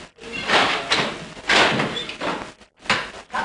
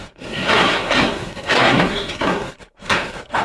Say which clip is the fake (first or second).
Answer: second